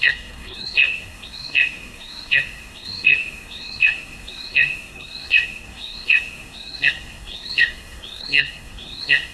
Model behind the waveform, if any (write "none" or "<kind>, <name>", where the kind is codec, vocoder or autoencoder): codec, SNAC